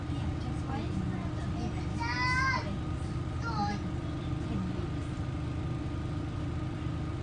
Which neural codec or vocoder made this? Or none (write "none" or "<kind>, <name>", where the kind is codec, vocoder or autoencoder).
none